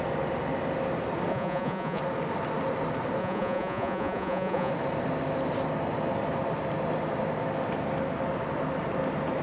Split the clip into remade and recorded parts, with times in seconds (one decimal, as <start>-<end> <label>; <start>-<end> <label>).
0.0-1.3 recorded; 1.3-2.0 remade; 2.0-3.2 recorded; 3.2-4.7 remade; 4.7-9.4 recorded